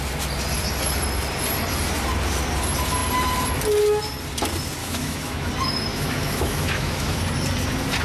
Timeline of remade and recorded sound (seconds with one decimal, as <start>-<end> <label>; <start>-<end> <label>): 0.0-4.8 recorded; 4.8-5.5 remade; 5.5-5.9 recorded; 5.9-7.2 remade; 7.2-8.0 recorded